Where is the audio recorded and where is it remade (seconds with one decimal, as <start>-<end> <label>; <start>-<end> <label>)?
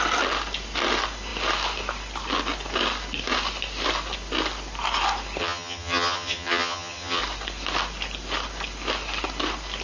0.0-5.4 recorded; 5.4-7.2 remade; 7.2-9.8 recorded